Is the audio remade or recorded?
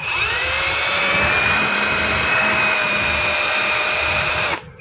remade